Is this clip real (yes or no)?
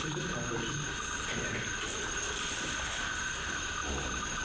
yes